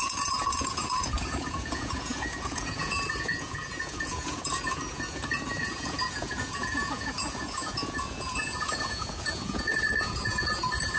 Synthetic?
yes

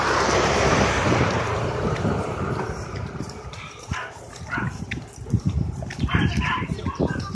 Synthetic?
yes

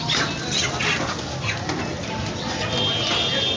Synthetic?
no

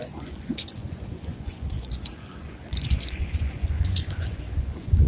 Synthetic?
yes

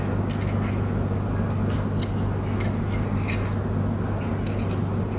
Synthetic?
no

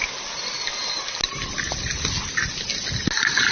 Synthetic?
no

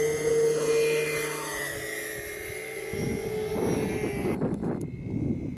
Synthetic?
no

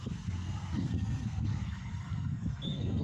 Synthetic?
yes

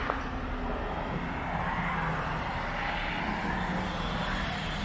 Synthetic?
no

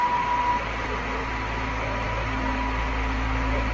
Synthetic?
no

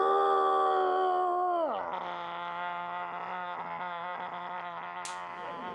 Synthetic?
no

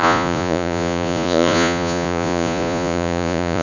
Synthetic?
yes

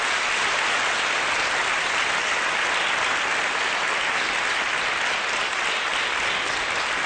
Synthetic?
no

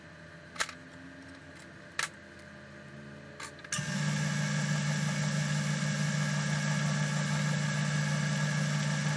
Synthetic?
no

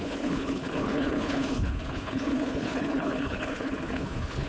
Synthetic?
yes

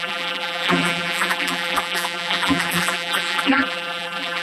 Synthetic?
yes